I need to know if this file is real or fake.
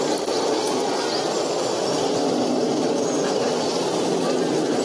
real